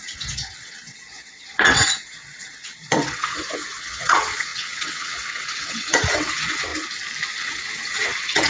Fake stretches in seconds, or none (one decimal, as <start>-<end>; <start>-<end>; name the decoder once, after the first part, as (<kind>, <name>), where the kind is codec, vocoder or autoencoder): 0.0-6.7 (vocoder, WaveNeXt); 7.4-8.5

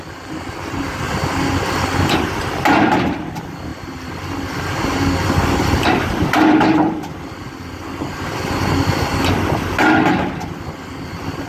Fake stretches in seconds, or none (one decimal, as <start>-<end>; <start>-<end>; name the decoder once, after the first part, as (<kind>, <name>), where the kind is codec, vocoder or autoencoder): 3.7-4.8 (vocoder, BigVGAN v2); 5.4-7.5

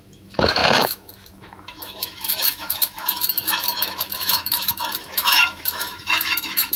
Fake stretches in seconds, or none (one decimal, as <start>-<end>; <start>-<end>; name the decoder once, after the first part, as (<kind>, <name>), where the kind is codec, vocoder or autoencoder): 0.0-6.8 (autoencoder, DAC-VAE)

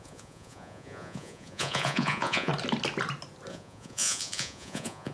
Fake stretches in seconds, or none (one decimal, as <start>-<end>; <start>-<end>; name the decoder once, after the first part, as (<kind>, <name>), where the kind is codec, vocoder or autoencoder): 0.0-2.5 (vocoder, Vocos); 3.5-5.1